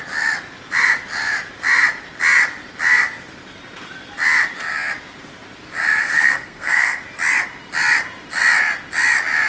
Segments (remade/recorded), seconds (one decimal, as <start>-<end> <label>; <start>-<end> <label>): 0.0-6.0 recorded; 6.0-7.0 remade; 7.0-9.5 recorded